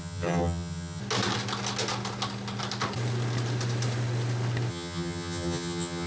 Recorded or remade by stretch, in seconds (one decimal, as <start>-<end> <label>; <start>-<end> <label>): 0.0-1.0 remade; 1.0-4.7 recorded; 4.7-6.1 remade